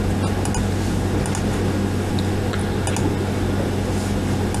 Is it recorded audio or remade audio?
recorded